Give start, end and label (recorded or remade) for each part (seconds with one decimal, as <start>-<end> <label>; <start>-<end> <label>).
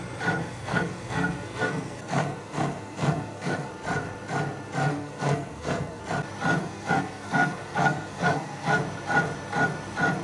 0.0-0.4 recorded; 0.4-3.7 remade; 3.7-4.9 recorded; 4.9-6.0 remade; 6.0-6.6 recorded; 6.6-8.8 remade; 8.8-10.2 recorded